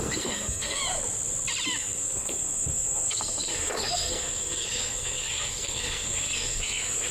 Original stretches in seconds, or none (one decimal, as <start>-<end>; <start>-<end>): 0.8-1.8